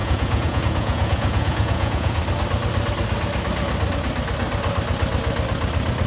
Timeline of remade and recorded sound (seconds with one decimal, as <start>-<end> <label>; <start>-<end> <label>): 0.0-2.2 remade; 2.2-6.1 recorded